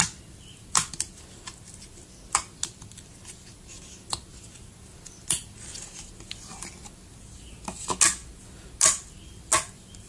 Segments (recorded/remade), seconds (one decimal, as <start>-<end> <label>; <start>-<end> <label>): 0.0-10.1 recorded